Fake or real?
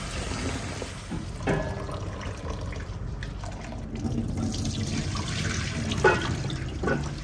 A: real